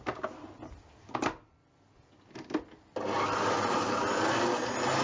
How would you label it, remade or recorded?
recorded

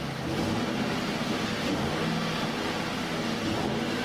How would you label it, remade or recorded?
recorded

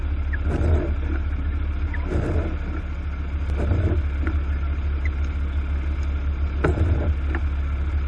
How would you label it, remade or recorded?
recorded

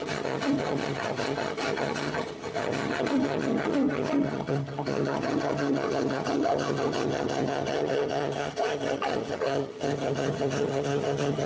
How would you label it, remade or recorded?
remade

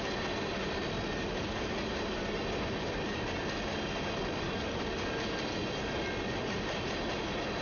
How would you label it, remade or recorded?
recorded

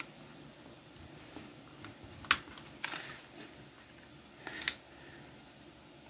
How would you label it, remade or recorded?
recorded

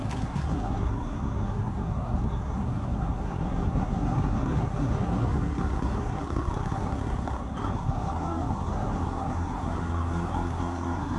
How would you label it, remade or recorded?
remade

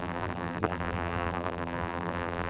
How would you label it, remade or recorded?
remade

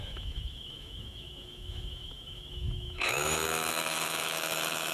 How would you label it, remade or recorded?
remade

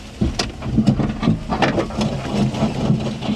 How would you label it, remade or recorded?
recorded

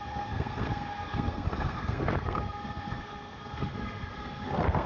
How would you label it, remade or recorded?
remade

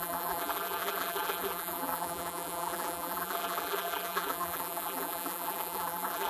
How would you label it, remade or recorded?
remade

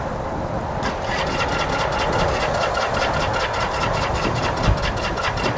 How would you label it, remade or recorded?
recorded